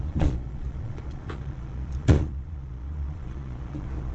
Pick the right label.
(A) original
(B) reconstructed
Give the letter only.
B